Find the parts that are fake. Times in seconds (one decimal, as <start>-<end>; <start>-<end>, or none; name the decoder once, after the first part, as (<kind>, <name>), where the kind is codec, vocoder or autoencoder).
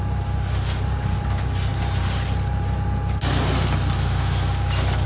none